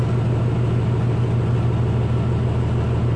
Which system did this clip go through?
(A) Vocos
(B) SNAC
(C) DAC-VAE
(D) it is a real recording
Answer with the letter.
D